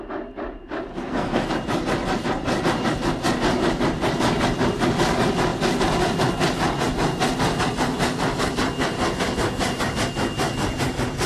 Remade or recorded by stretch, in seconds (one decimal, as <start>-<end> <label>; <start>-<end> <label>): 0.0-0.9 recorded; 0.9-1.5 remade; 1.5-11.3 recorded